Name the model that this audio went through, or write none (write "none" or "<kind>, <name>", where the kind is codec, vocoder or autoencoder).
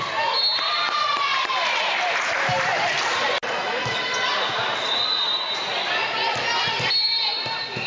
none